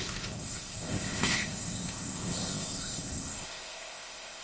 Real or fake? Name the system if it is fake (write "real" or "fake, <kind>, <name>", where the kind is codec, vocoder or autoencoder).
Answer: fake, codec, ZipCodec